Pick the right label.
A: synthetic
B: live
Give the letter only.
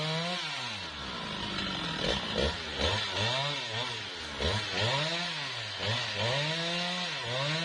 B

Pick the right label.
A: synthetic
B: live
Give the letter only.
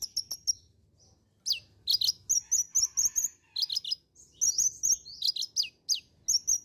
B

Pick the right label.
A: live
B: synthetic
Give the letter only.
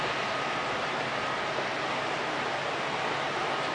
A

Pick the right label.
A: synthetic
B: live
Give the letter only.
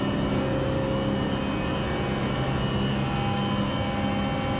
B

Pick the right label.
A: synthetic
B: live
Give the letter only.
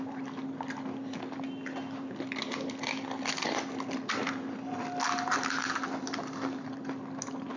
B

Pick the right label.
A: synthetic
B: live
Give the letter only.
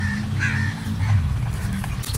B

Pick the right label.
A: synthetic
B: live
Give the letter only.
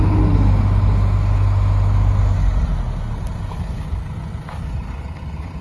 B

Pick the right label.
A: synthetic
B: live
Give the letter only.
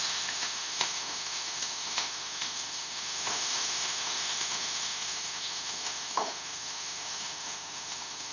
A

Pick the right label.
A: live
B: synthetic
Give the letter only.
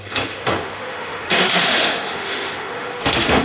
B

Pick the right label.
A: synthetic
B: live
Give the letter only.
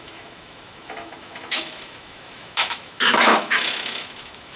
A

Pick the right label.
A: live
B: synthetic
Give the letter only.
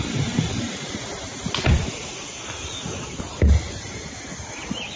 A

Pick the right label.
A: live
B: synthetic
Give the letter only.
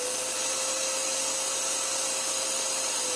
A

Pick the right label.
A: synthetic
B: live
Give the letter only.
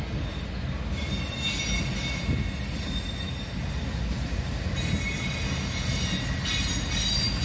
B